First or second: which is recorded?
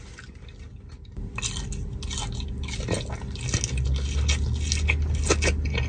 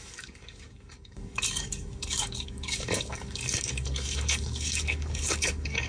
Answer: first